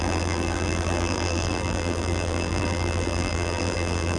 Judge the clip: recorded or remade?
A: remade